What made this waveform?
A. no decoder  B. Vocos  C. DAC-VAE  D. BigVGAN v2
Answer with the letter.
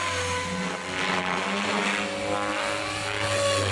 A